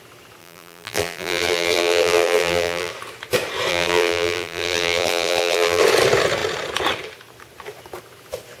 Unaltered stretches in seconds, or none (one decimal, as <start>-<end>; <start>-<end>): 0.0-0.4; 2.9-3.7; 5.8-8.6